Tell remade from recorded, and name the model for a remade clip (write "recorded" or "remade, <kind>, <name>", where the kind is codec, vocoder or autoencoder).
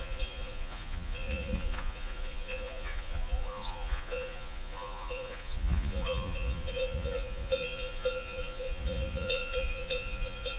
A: remade, vocoder, Vocos